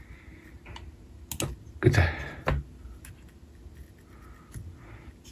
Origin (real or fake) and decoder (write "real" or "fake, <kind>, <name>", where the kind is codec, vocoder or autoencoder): real